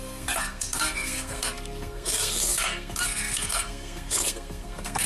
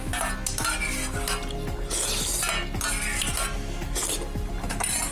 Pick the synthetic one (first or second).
first